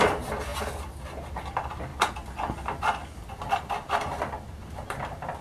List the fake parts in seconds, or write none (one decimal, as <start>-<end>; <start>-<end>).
none